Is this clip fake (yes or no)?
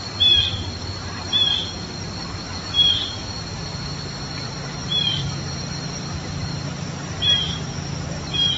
yes